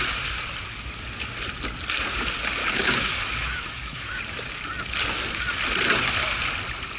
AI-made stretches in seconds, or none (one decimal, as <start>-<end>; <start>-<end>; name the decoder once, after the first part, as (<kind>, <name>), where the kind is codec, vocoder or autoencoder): 2.6-4.2 (autoencoder, DAC-VAE)